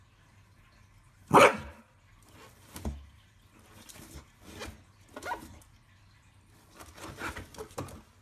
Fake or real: real